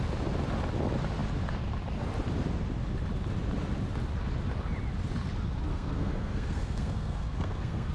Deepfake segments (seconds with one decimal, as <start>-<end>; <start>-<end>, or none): 5.7-7.9